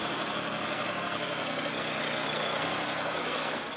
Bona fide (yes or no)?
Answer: no